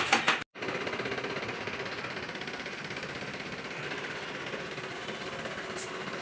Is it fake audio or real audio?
real